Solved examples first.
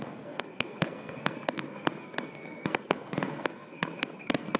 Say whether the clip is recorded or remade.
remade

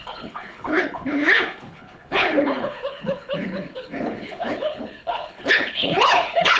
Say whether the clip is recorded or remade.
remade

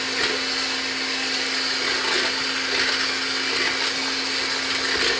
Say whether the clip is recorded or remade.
recorded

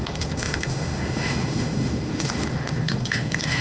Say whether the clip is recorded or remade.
remade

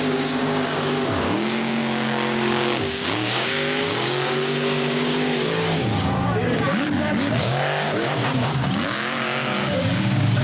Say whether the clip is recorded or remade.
remade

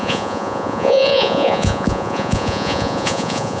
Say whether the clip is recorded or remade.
remade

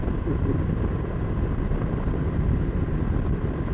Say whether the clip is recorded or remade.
recorded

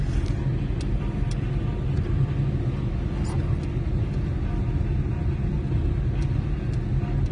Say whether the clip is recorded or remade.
recorded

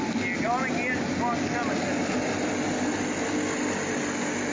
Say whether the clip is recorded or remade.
recorded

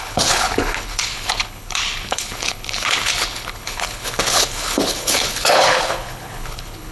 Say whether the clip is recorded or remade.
remade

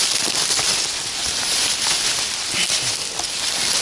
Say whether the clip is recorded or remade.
recorded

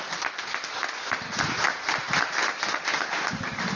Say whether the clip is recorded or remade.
recorded